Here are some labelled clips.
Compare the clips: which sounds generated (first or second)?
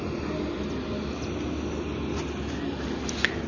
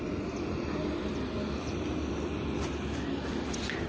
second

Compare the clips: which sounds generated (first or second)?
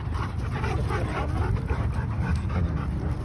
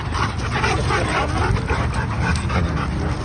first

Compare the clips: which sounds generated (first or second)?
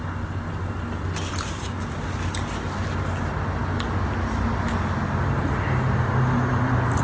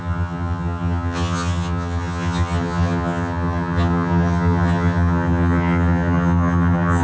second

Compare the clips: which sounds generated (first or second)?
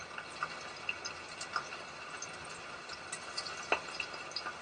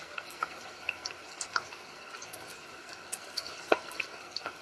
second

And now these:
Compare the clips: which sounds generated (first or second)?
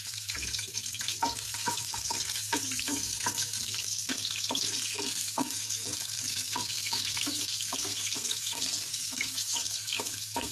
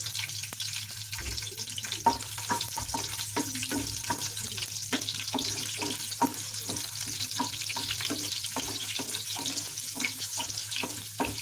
first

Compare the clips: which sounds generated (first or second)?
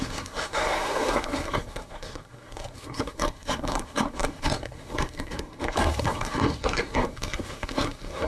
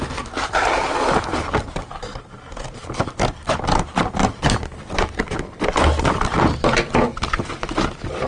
first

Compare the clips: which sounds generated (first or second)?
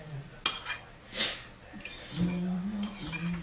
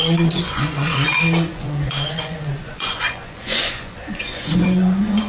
second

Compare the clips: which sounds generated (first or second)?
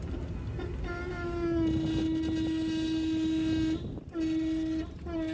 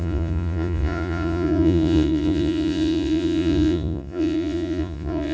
second